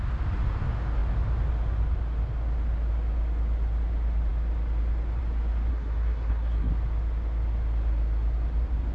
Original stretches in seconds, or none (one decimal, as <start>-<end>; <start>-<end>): 0.0-5.7; 6.7-8.9